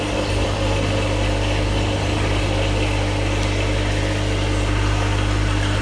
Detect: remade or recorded recorded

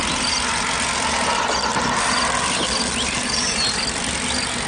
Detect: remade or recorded recorded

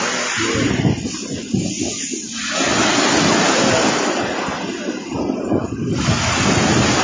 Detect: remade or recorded recorded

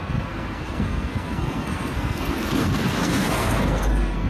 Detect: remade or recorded remade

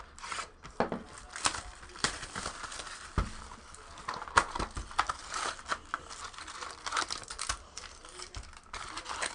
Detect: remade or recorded recorded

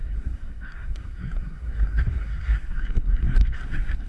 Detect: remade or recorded remade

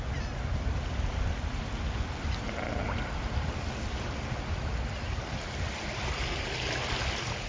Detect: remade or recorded recorded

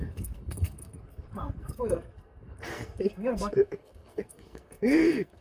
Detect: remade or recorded remade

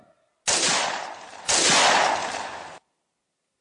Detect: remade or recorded recorded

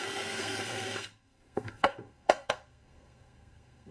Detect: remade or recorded remade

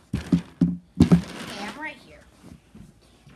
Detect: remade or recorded recorded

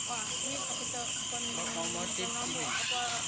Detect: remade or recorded recorded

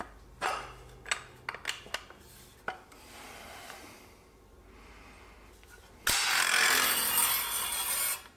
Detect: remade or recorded recorded